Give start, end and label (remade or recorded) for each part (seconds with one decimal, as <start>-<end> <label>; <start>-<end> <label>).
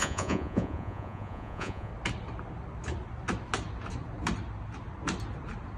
0.0-1.9 remade; 1.9-5.8 recorded